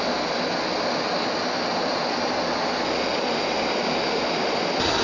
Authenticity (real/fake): real